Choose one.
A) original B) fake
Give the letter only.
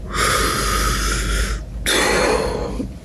A